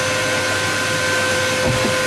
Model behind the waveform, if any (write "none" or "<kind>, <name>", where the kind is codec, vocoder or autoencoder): none